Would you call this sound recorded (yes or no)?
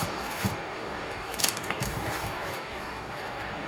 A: no